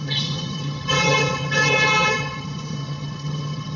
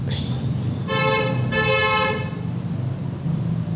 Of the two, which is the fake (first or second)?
first